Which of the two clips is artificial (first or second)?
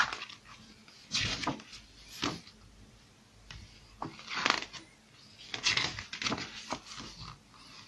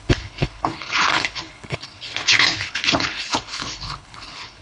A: second